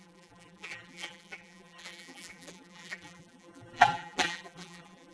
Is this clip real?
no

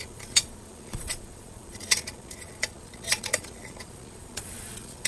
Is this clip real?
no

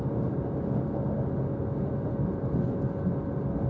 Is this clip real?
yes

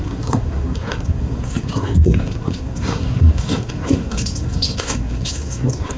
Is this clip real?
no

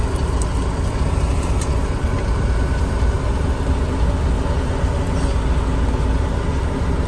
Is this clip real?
yes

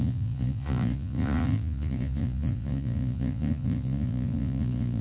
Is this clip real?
no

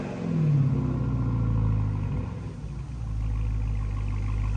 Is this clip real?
yes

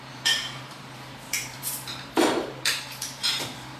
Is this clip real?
no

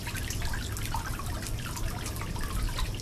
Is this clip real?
yes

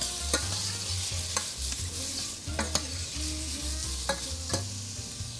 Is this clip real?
yes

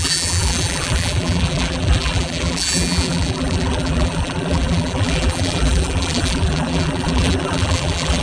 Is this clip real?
no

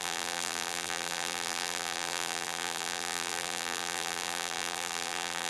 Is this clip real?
no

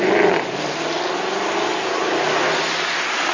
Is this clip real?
yes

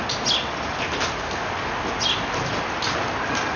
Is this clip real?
yes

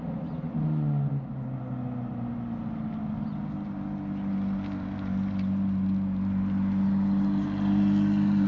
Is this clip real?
yes